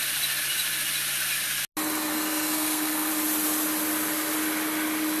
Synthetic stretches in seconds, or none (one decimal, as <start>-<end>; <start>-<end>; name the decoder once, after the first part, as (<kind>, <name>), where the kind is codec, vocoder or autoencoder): 2.1-3.1 (codec, SNAC)